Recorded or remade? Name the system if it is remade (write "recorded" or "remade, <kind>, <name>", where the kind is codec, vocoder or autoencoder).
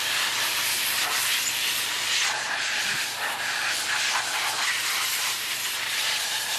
remade, vocoder, BigVGAN v2